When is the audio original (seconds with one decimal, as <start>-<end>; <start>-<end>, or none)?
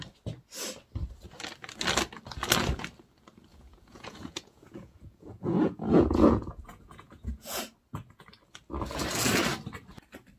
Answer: 0.0-3.5; 7.6-10.4